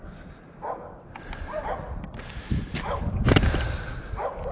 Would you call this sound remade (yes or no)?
no